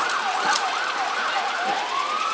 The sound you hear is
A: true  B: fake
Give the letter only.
A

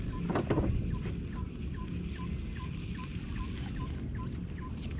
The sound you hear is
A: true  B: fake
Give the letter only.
A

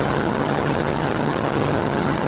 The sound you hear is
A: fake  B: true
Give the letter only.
A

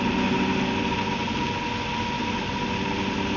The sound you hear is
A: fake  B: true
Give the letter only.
B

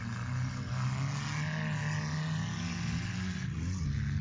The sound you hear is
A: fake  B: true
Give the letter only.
B